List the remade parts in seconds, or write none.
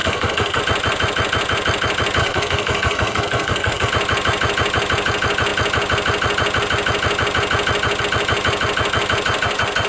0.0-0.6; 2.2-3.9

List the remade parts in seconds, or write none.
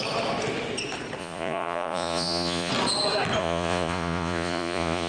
1.2-2.7; 3.4-5.1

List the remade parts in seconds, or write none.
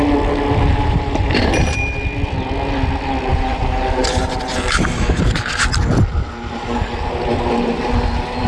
0.7-1.2; 3.3-4.2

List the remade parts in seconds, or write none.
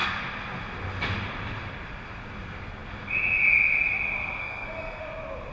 4.4-5.0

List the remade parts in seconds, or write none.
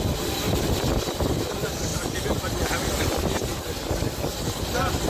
none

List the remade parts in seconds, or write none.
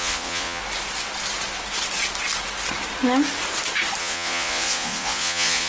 0.0-0.6; 4.0-5.7